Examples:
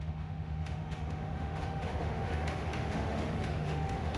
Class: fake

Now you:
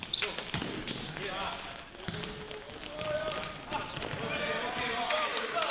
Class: real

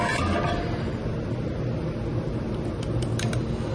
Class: real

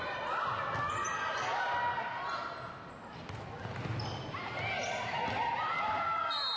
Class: real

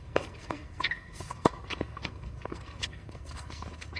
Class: fake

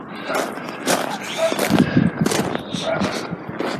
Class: real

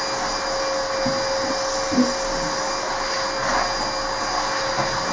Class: real